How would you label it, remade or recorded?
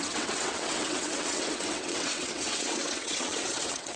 remade